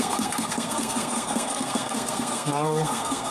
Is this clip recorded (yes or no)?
no